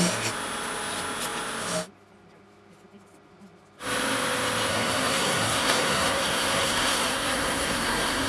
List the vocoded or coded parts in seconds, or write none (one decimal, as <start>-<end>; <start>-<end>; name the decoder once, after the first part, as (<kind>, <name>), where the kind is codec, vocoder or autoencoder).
4.7-8.3 (codec, SNAC)